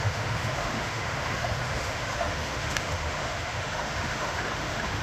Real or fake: fake